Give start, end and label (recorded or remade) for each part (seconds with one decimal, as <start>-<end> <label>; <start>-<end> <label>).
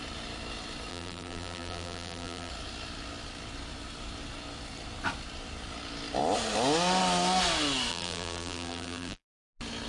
0.0-0.9 recorded; 0.9-2.5 remade; 2.5-7.9 recorded; 7.9-9.5 remade; 9.5-9.9 recorded